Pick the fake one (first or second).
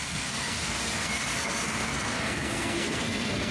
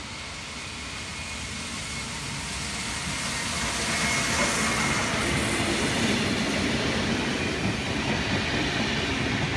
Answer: first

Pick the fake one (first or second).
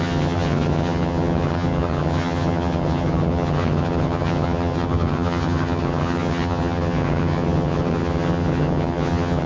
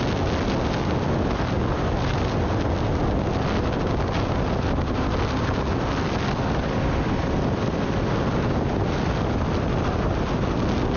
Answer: first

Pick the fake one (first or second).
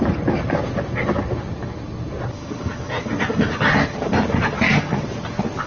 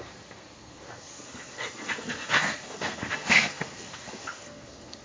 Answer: second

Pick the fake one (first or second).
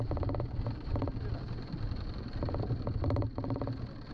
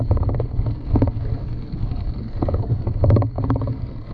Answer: second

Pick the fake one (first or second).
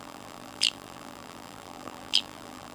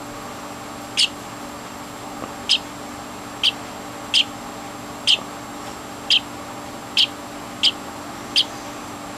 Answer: first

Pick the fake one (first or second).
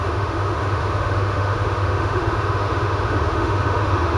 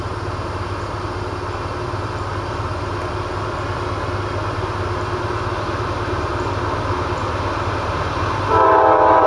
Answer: first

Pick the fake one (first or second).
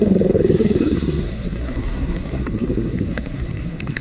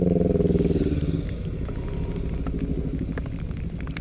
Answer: first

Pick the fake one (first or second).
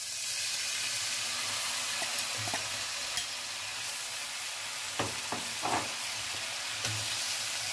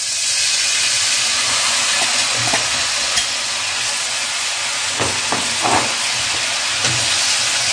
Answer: second